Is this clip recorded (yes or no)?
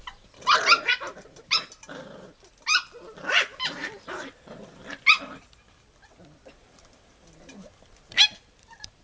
no